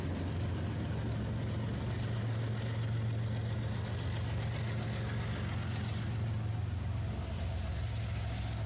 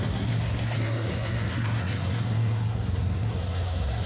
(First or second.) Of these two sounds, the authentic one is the first